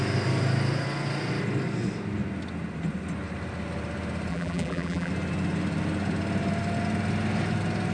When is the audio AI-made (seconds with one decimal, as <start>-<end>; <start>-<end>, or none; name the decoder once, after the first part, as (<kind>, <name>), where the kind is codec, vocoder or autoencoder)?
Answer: 4.3-5.1 (vocoder, BigVGAN v2)